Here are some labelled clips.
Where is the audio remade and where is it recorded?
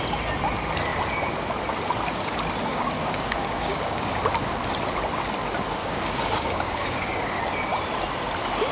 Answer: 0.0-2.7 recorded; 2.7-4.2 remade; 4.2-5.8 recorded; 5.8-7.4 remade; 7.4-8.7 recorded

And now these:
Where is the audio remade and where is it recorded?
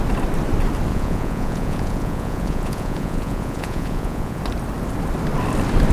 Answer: 0.0-0.9 recorded; 0.9-4.4 remade; 4.4-5.9 recorded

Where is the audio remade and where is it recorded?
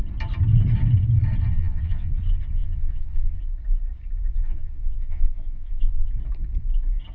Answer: 0.0-1.5 recorded; 1.5-2.1 remade; 2.1-2.6 recorded; 2.6-3.4 remade; 3.4-4.3 recorded; 4.3-6.1 remade; 6.1-7.1 recorded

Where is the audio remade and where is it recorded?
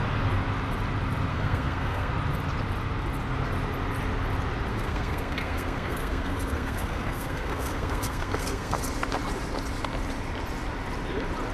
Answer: 0.0-1.3 recorded; 1.3-2.1 remade; 2.1-4.7 recorded; 4.7-8.8 remade; 8.8-11.5 recorded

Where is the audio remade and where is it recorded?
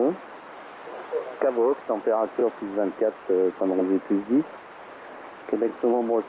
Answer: 0.0-5.7 recorded; 5.7-6.3 remade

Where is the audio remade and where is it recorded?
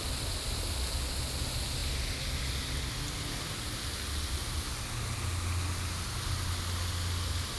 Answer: 0.0-7.6 recorded